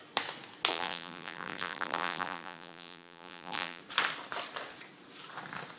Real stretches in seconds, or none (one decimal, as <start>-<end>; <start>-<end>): 0.0-0.7; 3.8-5.8